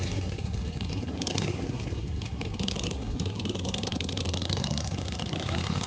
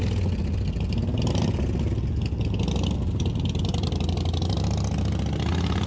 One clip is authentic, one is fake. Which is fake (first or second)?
first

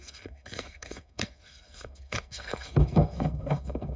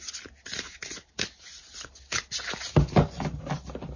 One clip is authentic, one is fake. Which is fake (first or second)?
first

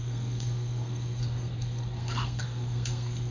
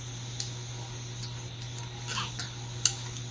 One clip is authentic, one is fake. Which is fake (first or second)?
first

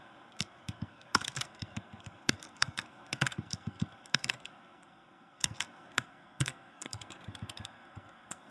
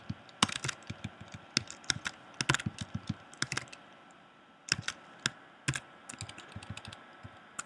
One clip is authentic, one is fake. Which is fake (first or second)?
first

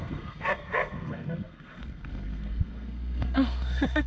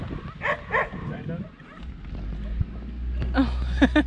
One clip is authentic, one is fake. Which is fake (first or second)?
first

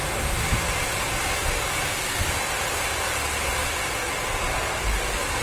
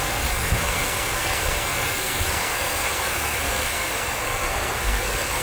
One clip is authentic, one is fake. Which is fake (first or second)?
second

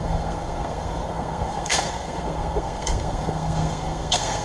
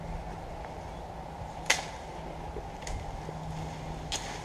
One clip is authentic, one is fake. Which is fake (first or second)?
first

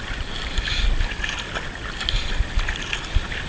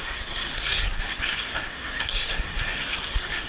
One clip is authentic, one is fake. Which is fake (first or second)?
second